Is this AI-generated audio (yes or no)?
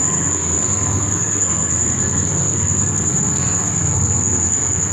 yes